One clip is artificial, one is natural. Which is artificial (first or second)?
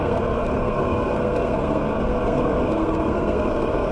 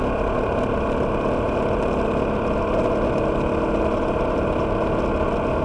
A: first